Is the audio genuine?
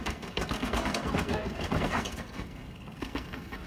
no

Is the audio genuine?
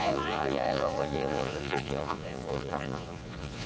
no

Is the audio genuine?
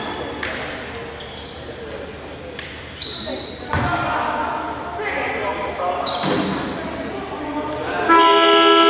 yes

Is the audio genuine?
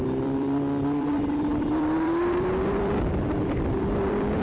no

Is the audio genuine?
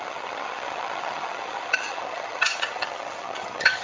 no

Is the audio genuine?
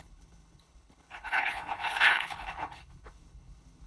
no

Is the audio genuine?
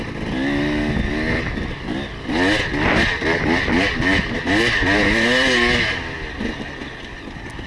yes